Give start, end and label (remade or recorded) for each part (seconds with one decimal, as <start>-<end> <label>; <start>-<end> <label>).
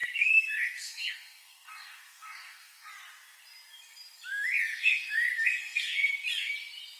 0.0-2.9 remade; 2.9-4.7 recorded; 4.7-6.1 remade; 6.1-7.0 recorded